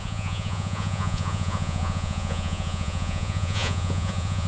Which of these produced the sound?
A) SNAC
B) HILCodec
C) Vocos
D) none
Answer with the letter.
C